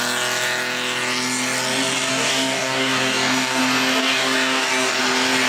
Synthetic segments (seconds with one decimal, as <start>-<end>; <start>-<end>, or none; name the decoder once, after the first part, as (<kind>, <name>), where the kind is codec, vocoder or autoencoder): 2.1-3.6 (codec, DAC); 4.0-5.0